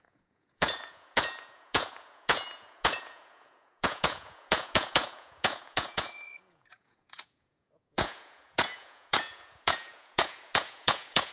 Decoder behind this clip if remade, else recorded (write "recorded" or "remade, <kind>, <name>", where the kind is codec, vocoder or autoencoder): remade, vocoder, Vocos